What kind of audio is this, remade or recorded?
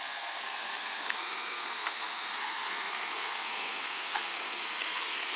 remade